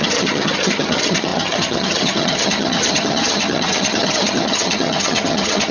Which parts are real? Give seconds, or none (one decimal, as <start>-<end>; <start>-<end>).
none

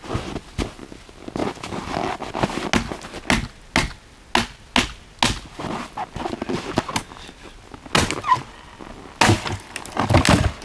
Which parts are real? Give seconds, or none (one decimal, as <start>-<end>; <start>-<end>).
0.0-10.6

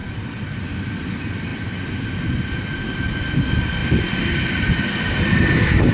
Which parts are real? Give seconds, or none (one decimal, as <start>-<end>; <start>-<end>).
0.9-3.8; 4.8-5.9

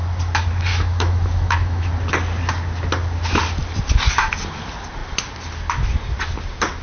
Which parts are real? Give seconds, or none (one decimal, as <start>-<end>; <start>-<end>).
0.0-0.7; 1.9-6.8

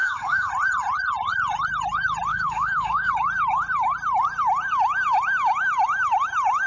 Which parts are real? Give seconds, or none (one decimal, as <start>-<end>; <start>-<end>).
0.5-2.3; 3.1-6.7

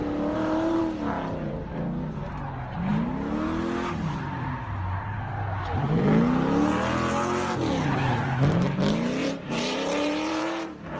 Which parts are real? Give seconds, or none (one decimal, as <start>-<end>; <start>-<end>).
0.8-9.2

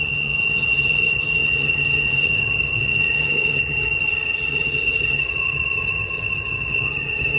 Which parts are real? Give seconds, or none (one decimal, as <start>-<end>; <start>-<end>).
none